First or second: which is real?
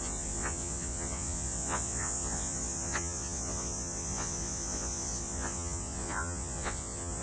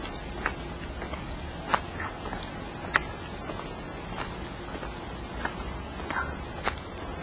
second